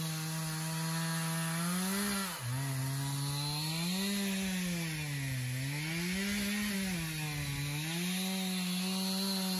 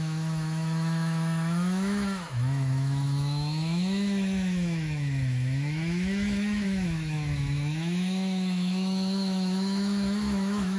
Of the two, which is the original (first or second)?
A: first